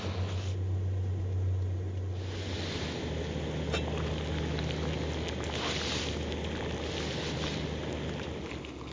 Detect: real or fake real